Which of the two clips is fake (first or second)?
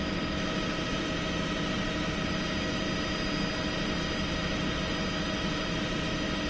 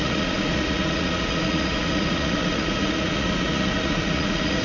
second